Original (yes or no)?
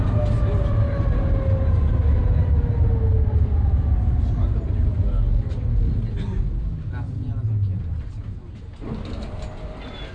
yes